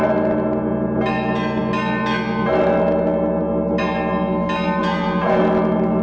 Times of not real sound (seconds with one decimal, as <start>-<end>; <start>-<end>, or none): 4.8-5.4